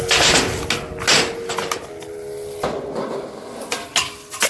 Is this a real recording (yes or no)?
yes